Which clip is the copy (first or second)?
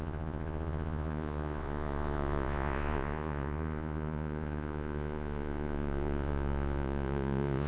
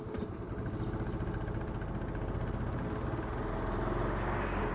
first